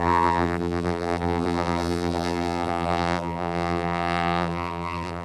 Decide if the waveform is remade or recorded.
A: remade